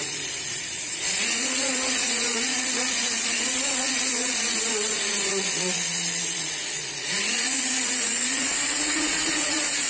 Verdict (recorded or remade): remade